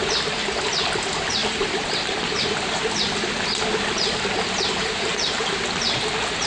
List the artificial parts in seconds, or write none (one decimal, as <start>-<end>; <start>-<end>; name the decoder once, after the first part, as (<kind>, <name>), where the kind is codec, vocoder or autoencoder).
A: 1.4-2.8 (vocoder, BigVGAN v2); 5.1-5.6